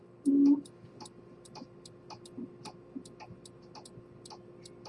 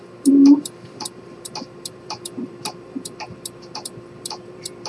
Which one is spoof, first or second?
second